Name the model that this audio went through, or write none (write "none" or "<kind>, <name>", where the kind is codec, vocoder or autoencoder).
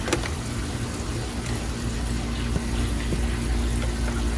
none